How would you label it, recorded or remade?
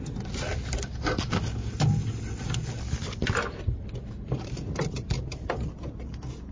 recorded